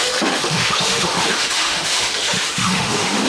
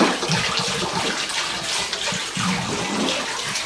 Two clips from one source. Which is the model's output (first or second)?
first